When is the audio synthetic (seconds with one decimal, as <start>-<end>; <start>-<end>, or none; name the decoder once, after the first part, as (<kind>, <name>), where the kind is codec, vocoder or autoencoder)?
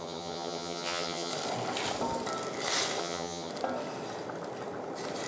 0.0-1.3 (vocoder, HiFi-GAN); 3.0-3.5